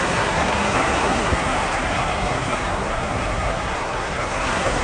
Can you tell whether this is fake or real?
fake